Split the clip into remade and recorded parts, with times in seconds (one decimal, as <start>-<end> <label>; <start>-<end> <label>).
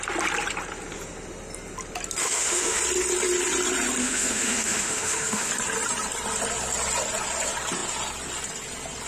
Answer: 0.0-2.2 recorded; 2.2-2.8 remade; 2.8-4.0 recorded; 4.0-5.5 remade; 5.5-9.1 recorded